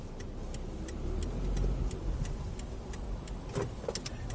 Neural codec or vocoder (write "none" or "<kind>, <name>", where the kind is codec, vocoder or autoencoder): none